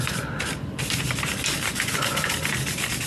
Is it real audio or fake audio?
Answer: fake